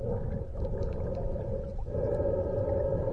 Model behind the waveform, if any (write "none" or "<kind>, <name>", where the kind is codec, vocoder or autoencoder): none